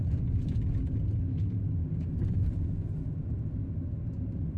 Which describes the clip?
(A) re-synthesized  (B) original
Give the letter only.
B